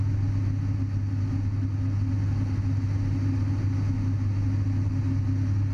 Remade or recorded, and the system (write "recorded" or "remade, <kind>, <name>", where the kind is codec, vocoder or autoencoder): recorded